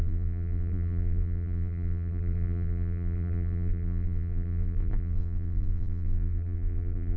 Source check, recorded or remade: remade